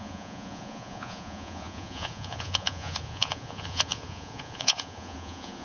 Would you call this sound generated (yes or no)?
yes